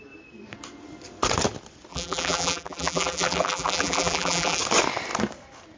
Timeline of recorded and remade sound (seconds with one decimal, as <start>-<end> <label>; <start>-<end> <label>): 0.0-1.9 recorded; 1.9-4.6 remade; 4.6-5.8 recorded